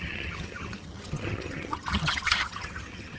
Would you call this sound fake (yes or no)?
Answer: yes